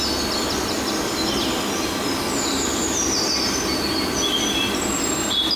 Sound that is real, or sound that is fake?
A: real